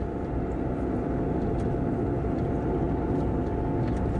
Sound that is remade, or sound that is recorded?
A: recorded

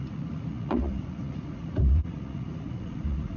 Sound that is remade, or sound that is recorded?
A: remade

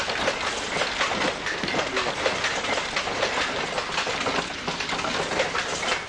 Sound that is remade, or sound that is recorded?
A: recorded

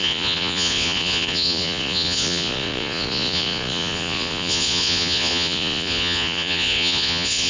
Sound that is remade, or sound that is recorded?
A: remade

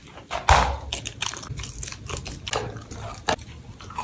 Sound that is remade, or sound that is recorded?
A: recorded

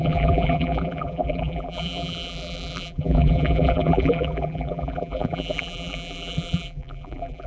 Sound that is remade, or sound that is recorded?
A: remade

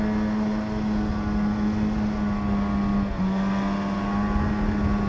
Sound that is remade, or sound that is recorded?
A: recorded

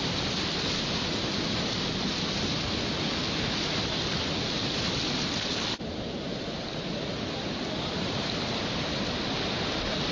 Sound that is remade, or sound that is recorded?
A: recorded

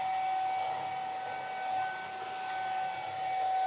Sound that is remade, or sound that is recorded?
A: recorded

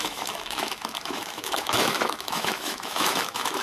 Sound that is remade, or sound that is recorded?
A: remade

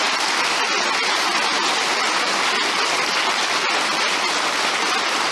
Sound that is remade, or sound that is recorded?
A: recorded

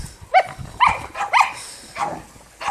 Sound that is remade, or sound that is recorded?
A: recorded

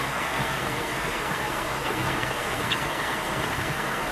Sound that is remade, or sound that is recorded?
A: remade